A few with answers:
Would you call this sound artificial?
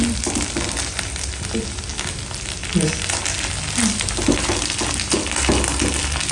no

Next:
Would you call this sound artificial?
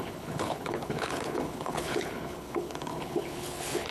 yes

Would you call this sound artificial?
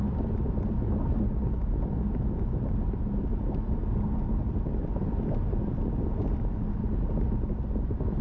no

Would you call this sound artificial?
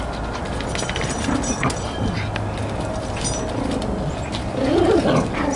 no